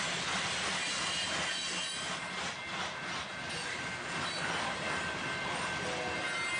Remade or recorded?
recorded